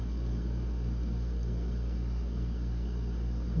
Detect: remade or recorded remade